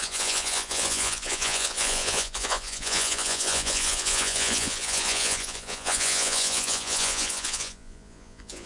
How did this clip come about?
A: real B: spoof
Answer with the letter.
B